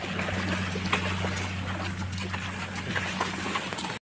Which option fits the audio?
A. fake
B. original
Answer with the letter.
B